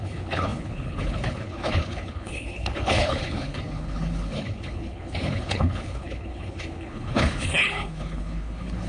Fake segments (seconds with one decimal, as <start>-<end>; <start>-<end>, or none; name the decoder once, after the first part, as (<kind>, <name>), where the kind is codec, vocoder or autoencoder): 0.0-8.9 (codec, HILCodec)